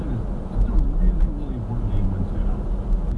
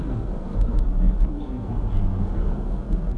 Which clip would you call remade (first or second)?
second